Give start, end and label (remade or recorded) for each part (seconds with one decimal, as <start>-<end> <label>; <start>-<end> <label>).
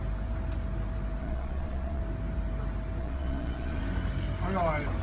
0.0-1.2 recorded; 1.2-2.0 remade; 2.0-3.0 recorded; 3.0-3.8 remade; 3.8-5.0 recorded